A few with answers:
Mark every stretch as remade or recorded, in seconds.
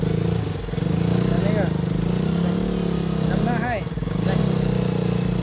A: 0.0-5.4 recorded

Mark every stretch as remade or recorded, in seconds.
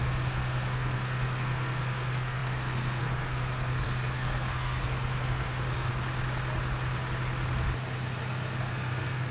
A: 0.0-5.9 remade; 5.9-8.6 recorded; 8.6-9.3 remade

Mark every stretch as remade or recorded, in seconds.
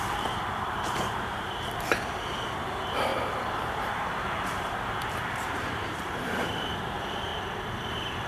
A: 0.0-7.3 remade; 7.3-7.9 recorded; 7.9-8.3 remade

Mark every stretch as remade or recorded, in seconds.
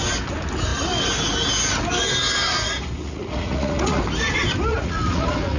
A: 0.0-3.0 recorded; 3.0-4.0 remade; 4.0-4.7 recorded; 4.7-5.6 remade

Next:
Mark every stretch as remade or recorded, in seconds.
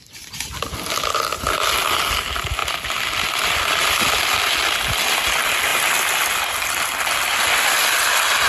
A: 0.0-2.6 recorded; 2.6-3.8 remade; 3.8-8.5 recorded